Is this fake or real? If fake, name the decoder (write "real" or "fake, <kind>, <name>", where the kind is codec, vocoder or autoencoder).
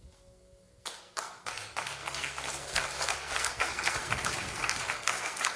fake, codec, SNAC